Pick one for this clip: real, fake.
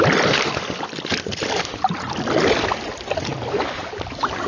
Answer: real